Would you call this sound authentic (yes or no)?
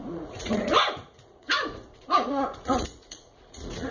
no